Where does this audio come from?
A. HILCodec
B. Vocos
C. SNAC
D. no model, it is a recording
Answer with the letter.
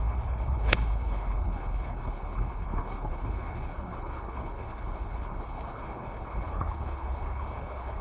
A